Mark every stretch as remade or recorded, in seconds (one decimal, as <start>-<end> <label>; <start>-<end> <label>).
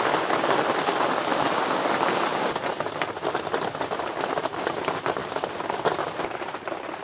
0.0-7.0 recorded